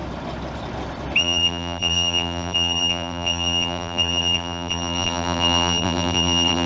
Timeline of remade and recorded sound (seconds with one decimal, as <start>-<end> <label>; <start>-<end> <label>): 0.0-1.2 recorded; 1.2-6.7 remade